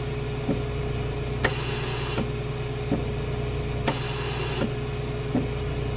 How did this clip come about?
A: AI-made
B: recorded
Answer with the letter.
B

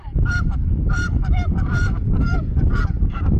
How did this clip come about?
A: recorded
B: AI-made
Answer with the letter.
B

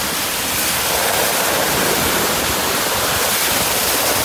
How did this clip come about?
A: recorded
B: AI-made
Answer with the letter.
A